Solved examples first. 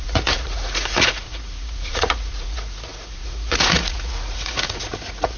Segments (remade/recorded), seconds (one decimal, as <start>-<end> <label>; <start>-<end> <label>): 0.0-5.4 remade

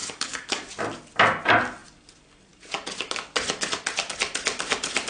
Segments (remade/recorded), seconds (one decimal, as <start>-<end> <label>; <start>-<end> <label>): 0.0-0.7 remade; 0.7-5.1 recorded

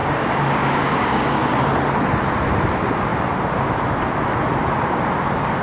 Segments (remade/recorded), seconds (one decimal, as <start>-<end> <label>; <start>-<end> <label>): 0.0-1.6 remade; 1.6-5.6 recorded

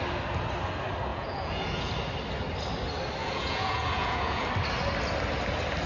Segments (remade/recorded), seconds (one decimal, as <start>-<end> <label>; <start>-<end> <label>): 0.0-1.1 recorded; 1.1-1.9 remade; 1.9-3.2 recorded; 3.2-4.5 remade; 4.5-5.9 recorded

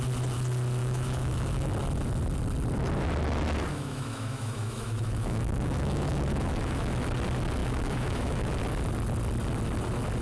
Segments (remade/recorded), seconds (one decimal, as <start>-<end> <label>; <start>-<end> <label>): 0.0-0.8 recorded; 0.8-1.7 remade; 1.7-3.7 recorded; 3.7-7.1 remade; 7.1-7.6 recorded; 7.6-8.6 remade; 8.6-10.2 recorded

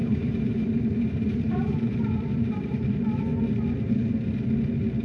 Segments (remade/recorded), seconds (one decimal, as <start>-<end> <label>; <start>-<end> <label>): 0.0-3.0 remade; 3.0-5.0 recorded

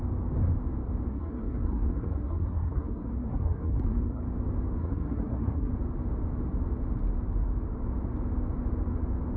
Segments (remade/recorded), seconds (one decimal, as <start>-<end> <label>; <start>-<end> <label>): 0.0-1.1 recorded; 1.1-4.2 remade; 4.2-4.8 recorded; 4.8-5.7 remade; 5.7-9.4 recorded

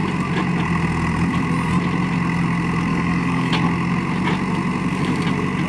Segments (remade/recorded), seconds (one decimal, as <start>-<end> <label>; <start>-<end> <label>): 0.0-2.9 recorded; 2.9-3.5 remade; 3.5-5.7 recorded